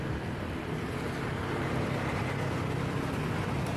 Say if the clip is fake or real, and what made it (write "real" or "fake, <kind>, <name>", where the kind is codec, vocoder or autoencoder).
fake, vocoder, BigVGAN v2